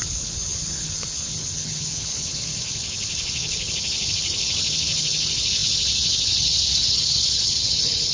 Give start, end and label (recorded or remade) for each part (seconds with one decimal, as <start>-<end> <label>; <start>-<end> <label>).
0.0-8.1 remade